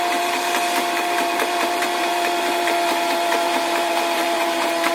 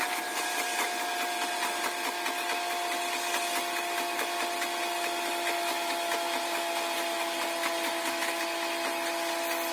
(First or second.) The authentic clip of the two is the second